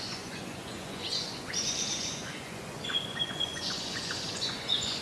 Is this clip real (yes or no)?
no